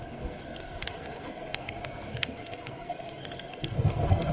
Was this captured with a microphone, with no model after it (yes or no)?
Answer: no